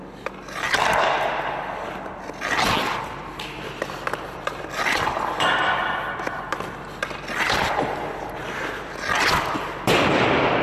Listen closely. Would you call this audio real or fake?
real